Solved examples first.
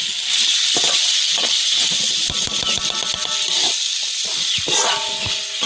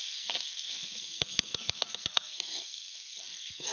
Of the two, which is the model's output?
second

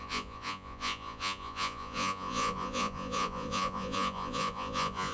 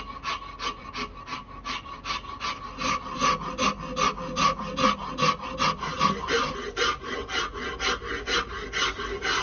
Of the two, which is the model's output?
first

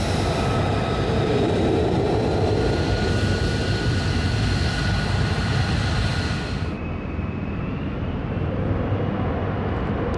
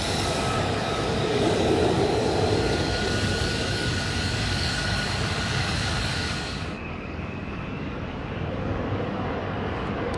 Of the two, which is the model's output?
second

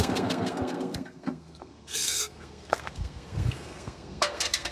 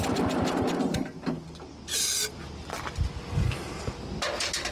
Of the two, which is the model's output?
first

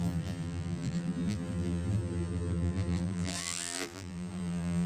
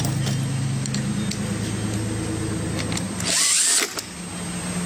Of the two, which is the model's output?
first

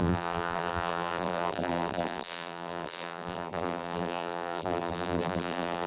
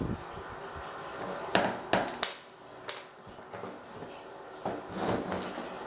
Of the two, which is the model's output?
first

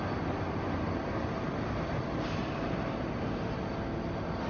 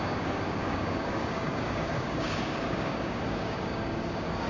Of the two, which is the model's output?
second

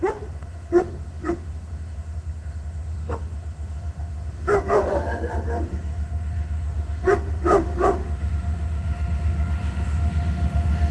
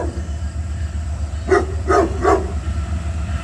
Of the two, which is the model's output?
first